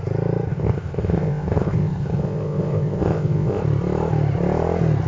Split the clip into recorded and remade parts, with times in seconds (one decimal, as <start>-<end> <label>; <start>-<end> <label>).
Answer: 0.0-0.5 recorded; 0.5-3.6 remade; 3.6-5.1 recorded